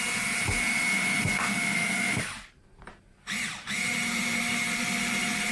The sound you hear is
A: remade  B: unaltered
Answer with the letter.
A